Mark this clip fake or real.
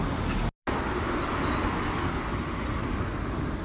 real